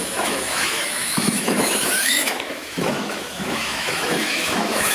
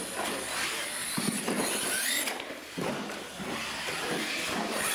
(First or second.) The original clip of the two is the second